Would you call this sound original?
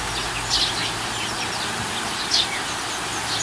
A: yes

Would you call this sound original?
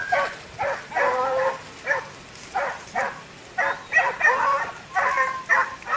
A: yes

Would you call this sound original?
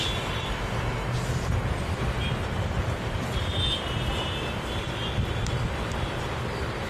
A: yes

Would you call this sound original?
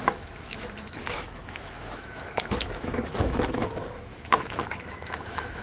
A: no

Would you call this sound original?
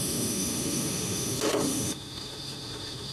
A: no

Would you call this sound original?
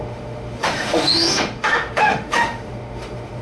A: no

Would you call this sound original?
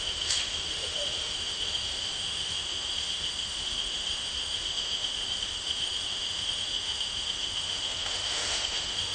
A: no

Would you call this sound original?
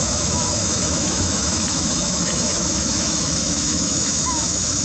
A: no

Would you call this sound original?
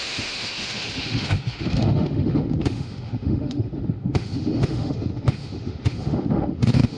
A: no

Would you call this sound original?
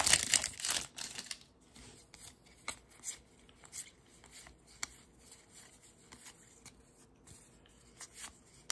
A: yes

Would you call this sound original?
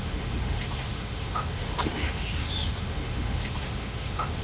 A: no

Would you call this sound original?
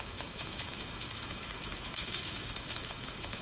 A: no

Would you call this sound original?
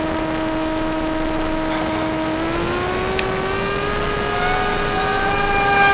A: yes